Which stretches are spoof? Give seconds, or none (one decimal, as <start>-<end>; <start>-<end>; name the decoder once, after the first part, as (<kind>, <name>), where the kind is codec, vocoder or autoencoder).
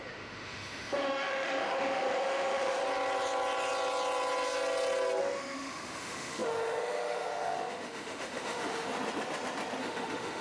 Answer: 0.0-2.8 (autoencoder, DAC-VAE); 5.2-8.9; 9.8-10.4